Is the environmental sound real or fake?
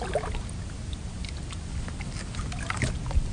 real